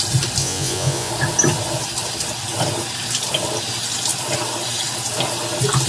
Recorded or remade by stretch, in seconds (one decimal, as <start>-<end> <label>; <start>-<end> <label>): 0.0-0.4 recorded; 0.4-1.1 remade; 1.1-5.9 recorded